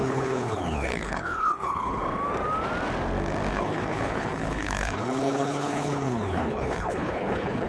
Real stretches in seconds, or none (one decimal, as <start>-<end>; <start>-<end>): 2.0-3.5